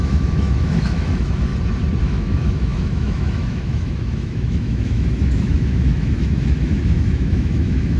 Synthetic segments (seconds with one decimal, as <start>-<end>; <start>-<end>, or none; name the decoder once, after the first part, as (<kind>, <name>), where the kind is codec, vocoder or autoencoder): 0.0-1.5 (autoencoder, DAC-VAE); 2.0-8.0